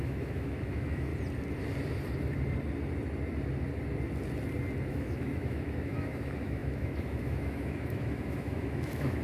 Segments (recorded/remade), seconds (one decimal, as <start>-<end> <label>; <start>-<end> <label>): 0.0-1.1 remade; 1.1-4.9 recorded; 4.9-9.2 remade